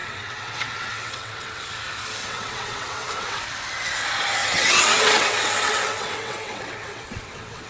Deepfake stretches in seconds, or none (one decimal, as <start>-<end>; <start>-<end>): 0.0-1.6; 2.2-3.4; 4.4-7.7